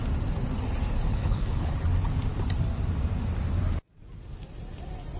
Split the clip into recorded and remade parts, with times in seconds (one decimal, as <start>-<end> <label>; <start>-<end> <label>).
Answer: 0.0-1.1 recorded; 1.1-1.7 remade; 1.7-5.2 recorded